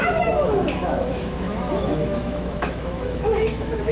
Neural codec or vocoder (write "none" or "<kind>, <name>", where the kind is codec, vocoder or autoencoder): autoencoder, DAC-VAE